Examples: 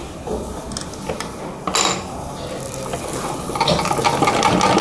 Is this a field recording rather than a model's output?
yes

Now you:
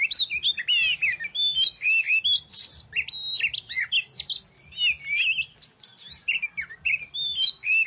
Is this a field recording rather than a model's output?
yes